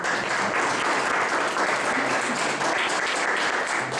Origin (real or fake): real